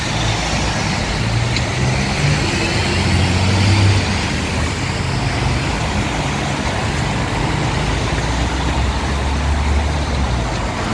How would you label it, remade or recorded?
recorded